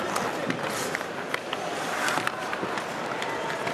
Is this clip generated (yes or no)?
no